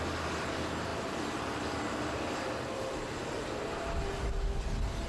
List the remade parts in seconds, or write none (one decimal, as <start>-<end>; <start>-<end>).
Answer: 0.9-4.0